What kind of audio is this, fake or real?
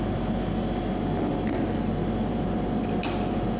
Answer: real